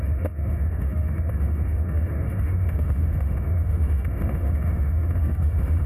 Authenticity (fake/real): fake